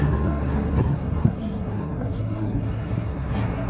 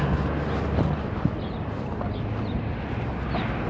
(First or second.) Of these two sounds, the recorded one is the second